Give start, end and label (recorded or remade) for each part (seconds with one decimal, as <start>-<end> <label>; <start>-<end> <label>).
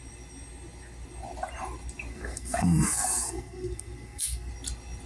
0.0-2.1 recorded; 2.1-4.5 remade; 4.5-5.1 recorded